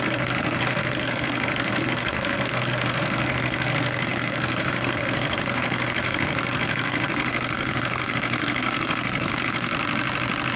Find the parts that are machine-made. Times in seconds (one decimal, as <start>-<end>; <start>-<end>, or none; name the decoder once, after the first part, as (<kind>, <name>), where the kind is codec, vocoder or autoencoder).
0.0-9.7 (codec, SNAC)